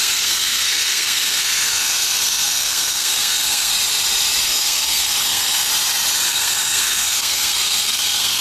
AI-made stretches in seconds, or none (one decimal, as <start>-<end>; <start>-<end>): 0.0-3.7; 4.4-5.7; 6.3-8.4